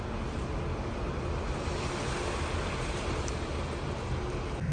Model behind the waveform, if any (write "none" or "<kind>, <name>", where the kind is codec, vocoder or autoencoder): none